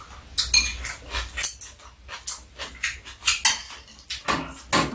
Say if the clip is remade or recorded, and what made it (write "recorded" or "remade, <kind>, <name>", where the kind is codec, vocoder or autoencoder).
recorded